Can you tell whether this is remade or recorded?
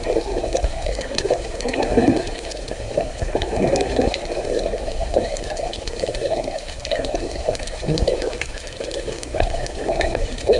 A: remade